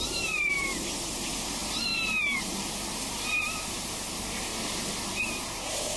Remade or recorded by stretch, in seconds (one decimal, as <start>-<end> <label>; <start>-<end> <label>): 0.0-4.5 remade; 4.5-5.4 recorded; 5.4-6.0 remade